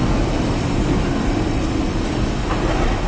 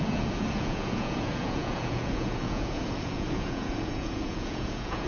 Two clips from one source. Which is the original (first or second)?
first